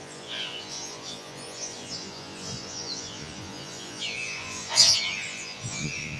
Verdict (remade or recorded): remade